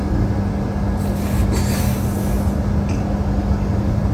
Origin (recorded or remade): recorded